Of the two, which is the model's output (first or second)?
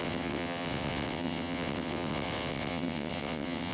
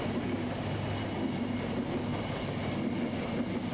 first